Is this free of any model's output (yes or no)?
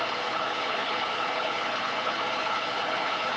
no